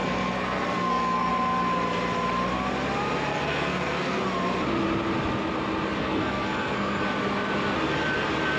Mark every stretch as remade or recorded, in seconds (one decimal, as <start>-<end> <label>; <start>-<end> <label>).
0.0-1.3 remade; 1.3-3.3 recorded; 3.3-4.2 remade; 4.2-6.0 recorded; 6.0-7.0 remade; 7.0-8.6 recorded